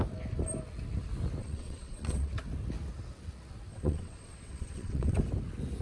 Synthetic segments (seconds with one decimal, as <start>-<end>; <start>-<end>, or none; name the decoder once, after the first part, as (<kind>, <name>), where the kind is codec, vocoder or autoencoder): 1.4-2.3 (vocoder, WaveNeXt); 3.7-5.2